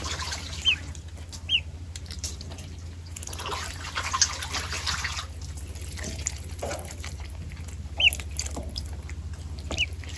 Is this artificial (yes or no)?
no